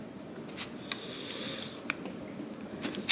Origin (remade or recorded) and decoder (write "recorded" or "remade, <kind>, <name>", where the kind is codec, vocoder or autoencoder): recorded